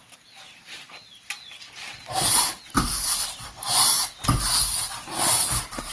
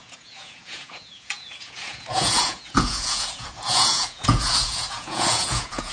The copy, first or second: second